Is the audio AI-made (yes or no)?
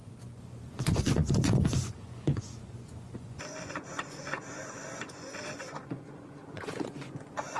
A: yes